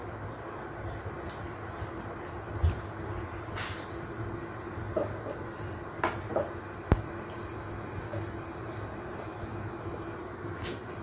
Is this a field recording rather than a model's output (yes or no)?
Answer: yes